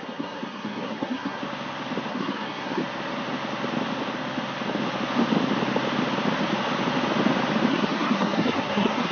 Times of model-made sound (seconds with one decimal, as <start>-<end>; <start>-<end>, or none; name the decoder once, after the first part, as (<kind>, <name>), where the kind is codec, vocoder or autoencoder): 0.0-1.4 (codec, SNAC); 2.1-2.8; 7.7-9.1